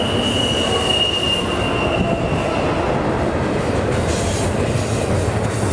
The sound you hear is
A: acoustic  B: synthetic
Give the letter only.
A